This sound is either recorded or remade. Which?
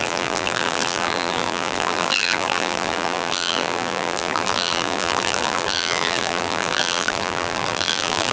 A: remade